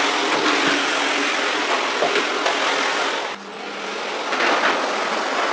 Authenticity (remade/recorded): recorded